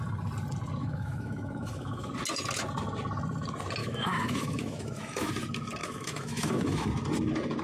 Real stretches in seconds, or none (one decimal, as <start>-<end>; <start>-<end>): 0.0-0.8; 2.1-3.8; 5.3-5.8; 6.9-7.6